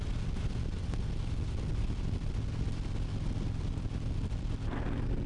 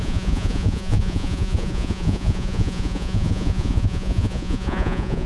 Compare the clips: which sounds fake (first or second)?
second